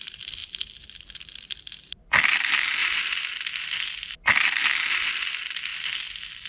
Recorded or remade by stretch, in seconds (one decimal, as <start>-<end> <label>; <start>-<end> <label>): 0.0-6.5 recorded

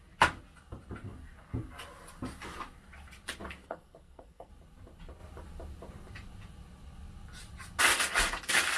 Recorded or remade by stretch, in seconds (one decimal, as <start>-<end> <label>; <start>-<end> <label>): 0.0-3.6 recorded; 3.6-4.5 remade; 4.5-8.8 recorded